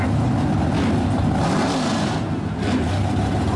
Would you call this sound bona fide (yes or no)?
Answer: yes